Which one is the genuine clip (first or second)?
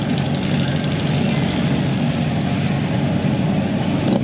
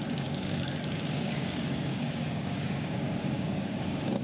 first